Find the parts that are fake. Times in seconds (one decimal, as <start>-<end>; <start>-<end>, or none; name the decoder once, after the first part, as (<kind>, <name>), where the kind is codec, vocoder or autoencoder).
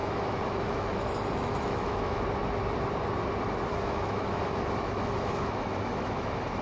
0.0-2.2 (autoencoder, DAC-VAE); 3.7-6.6